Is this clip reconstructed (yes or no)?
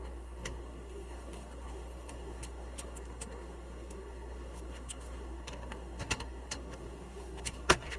yes